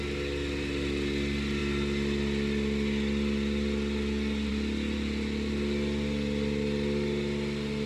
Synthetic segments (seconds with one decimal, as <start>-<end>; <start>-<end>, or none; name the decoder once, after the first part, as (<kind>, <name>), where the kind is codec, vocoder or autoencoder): none

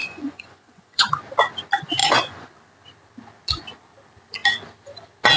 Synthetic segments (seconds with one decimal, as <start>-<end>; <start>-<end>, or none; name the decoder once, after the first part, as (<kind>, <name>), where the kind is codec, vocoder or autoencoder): 0.0-1.2 (vocoder, Vocos); 2.0-2.5

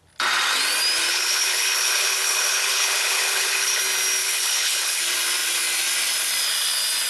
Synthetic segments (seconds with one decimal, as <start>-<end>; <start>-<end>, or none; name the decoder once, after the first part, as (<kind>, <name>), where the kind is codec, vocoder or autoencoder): 1.1-3.8 (codec, HILCodec); 4.2-5.0

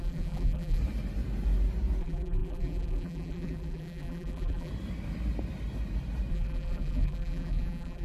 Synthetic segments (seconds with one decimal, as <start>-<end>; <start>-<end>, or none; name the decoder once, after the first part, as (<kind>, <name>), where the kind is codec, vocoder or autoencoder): 0.0-0.8 (vocoder, BigVGAN v2); 2.0-4.7; 6.3-8.0

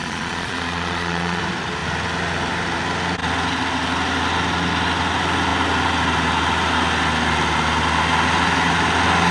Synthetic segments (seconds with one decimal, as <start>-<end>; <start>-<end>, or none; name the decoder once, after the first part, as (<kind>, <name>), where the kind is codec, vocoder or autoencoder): 0.0-1.4 (vocoder, Vocos)

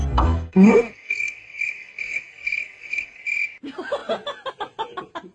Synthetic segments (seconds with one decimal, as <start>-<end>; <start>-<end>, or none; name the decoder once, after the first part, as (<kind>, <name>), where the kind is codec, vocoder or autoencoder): 0.0-3.2 (codec, SNAC)

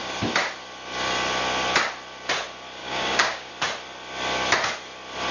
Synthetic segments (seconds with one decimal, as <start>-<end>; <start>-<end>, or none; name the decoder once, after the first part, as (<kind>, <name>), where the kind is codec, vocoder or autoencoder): 2.8-3.5 (codec, DAC)

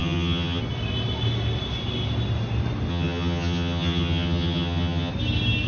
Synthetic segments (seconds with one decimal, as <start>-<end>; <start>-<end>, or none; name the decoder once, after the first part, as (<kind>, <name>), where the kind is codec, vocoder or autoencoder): 0.0-0.6 (vocoder, HiFi-GAN); 2.9-5.1